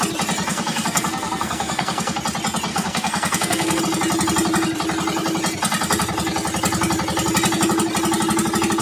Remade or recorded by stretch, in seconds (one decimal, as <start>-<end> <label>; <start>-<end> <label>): 0.0-0.5 recorded; 0.5-2.2 remade; 2.2-2.7 recorded; 2.7-3.8 remade; 3.8-8.8 recorded